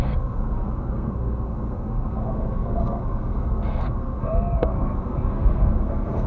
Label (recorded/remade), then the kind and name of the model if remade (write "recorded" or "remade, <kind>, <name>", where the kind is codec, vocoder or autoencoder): remade, codec, SNAC